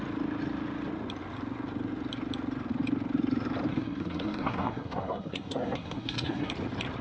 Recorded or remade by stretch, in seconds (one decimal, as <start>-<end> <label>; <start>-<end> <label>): 0.0-3.7 recorded; 3.7-6.5 remade; 6.5-7.0 recorded